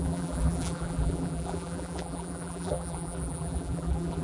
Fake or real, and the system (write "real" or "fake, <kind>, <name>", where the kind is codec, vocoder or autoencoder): fake, vocoder, BigVGAN v2